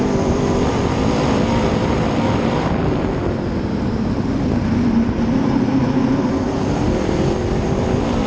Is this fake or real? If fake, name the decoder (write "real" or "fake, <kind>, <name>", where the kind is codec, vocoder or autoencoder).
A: fake, vocoder, BigVGAN v2